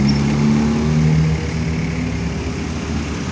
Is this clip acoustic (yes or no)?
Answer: yes